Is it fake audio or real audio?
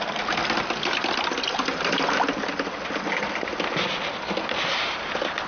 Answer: real